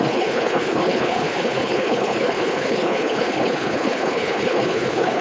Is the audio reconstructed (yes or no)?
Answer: yes